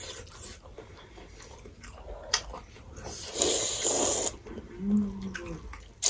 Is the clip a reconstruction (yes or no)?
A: no